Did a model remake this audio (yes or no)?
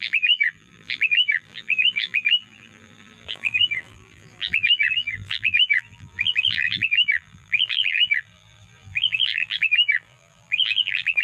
yes